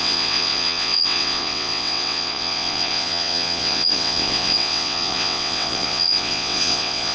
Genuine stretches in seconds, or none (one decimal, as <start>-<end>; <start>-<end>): none